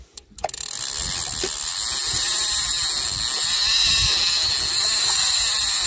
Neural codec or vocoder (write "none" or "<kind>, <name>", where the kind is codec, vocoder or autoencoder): none